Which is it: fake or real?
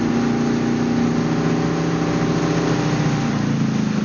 real